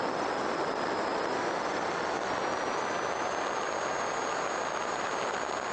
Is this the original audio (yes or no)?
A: yes